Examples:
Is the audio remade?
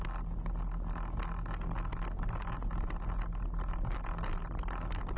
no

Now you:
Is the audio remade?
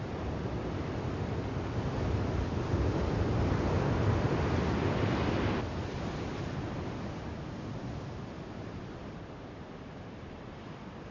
no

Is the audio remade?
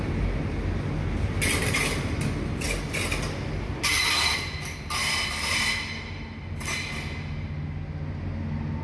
no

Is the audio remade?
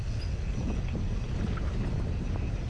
no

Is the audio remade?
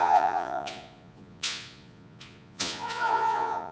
yes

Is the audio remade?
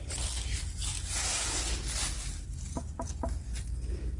no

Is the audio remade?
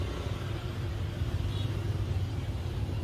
no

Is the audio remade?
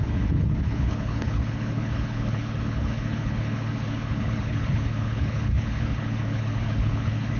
yes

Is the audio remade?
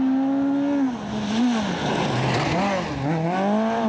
no